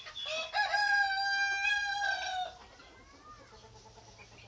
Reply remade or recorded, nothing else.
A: recorded